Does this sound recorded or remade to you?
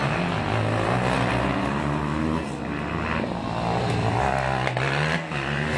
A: recorded